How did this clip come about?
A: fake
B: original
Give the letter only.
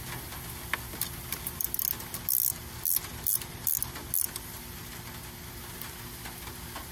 B